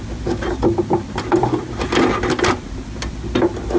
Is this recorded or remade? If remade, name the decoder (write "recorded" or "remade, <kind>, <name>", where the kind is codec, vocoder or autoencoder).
recorded